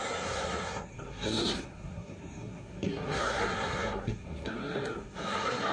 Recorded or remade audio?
remade